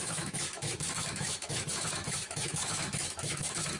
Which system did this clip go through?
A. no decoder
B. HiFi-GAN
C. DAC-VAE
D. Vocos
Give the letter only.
C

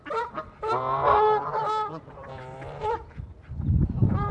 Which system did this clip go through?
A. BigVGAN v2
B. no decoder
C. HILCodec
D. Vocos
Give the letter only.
A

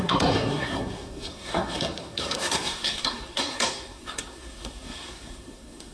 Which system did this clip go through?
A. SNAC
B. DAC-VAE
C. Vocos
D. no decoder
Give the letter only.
A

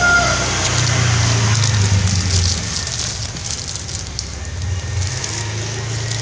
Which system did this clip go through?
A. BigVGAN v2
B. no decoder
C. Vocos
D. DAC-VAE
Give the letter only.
B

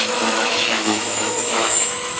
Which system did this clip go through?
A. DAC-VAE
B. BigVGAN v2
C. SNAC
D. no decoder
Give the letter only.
A